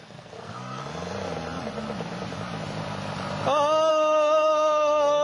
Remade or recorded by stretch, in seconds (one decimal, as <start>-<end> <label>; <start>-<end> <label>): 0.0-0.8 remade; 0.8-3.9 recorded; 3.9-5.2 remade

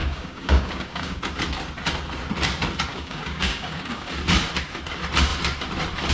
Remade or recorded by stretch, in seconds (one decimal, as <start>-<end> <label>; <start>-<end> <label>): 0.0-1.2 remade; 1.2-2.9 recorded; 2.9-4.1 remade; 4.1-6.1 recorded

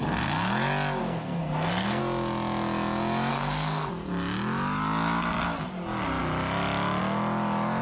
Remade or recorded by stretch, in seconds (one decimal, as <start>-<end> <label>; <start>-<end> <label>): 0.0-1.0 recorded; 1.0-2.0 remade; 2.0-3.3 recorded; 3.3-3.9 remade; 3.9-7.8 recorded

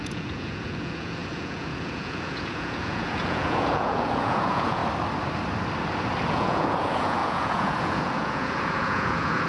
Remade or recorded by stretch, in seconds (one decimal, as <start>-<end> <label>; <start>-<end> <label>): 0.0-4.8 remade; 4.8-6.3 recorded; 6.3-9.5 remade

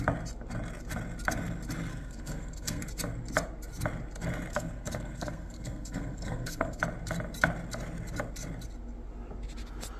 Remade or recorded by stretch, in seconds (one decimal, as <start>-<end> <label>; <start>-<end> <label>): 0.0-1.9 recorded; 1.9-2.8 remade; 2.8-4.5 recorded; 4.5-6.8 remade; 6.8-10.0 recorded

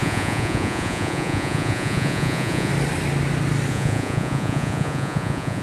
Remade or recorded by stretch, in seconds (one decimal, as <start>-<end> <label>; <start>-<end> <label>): 0.0-2.7 remade; 2.7-3.7 recorded; 3.7-5.6 remade

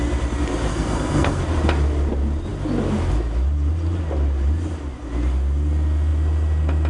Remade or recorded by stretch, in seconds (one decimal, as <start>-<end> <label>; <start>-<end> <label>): 0.0-0.7 recorded; 0.7-1.4 remade; 1.4-6.9 recorded